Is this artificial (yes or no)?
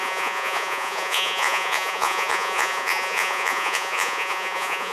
yes